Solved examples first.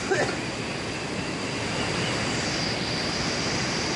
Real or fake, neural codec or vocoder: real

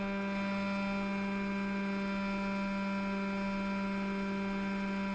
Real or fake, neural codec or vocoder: real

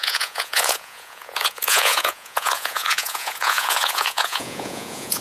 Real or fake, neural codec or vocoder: fake, vocoder, Vocos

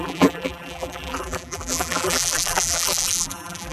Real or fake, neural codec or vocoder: fake, vocoder, BigVGAN v2